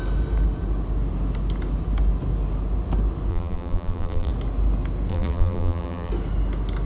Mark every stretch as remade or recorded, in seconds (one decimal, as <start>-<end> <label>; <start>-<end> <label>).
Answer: 0.0-3.3 recorded; 3.3-4.3 remade; 4.3-5.1 recorded; 5.1-6.1 remade; 6.1-6.9 recorded